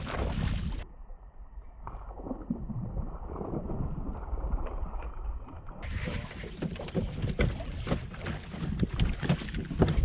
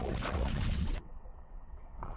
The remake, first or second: second